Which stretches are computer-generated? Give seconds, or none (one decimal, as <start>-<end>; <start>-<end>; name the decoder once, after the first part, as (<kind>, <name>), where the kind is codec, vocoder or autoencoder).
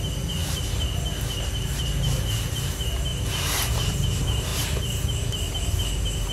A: 0.0-6.3 (vocoder, BigVGAN v2)